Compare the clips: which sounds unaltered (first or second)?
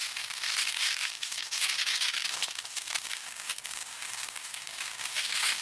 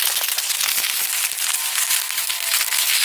second